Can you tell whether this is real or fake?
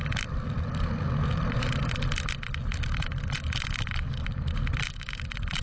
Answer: real